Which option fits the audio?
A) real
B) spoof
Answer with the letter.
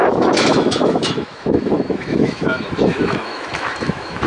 B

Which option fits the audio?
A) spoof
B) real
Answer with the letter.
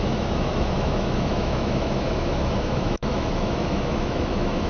A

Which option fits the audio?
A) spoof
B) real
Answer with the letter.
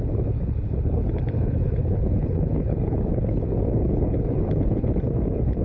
A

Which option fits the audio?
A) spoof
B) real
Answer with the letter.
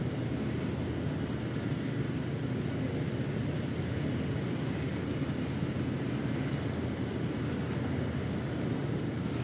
B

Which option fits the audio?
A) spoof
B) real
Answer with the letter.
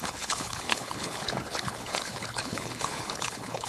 A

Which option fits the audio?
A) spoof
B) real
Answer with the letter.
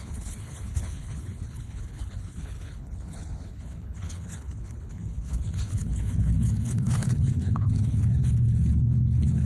A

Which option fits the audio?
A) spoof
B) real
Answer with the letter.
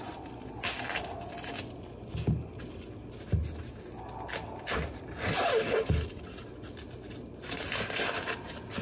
B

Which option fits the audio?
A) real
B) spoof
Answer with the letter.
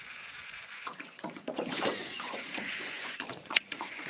B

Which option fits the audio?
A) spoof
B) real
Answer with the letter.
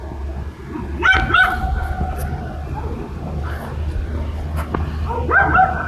B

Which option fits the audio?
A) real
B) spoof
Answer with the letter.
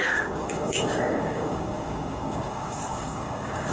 B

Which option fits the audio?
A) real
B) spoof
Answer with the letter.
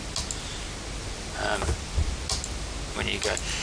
A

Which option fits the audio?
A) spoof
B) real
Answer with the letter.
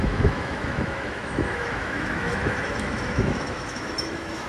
A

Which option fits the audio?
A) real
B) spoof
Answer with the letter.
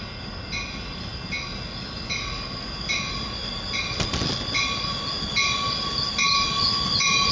A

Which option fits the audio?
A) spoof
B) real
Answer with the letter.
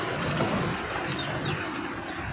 B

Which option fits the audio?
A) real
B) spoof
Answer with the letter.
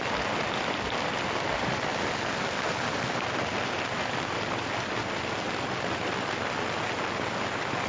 A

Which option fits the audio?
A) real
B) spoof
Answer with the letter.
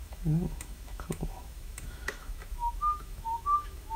B